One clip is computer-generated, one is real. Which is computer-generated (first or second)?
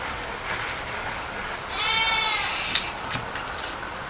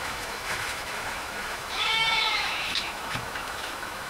second